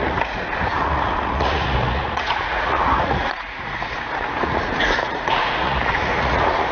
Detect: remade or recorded remade